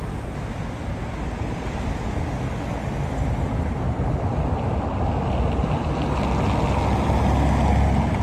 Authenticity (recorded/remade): recorded